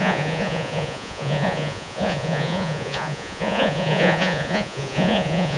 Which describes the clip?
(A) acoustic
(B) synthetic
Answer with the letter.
B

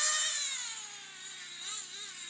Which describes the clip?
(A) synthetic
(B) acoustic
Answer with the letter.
B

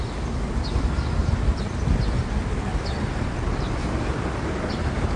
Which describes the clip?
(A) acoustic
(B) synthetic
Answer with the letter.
A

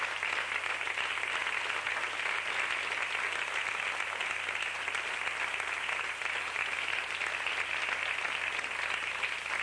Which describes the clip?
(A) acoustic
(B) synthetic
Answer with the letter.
A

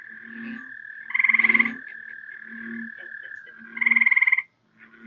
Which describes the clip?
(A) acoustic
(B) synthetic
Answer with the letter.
A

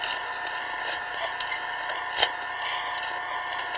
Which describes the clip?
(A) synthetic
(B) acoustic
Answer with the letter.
B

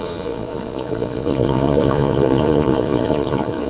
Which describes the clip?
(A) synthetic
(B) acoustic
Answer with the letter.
A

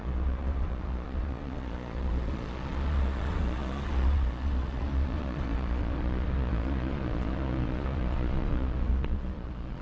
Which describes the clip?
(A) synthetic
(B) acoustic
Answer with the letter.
A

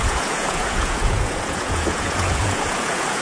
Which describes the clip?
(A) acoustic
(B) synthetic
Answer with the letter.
B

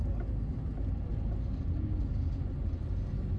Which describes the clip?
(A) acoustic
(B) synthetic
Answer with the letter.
A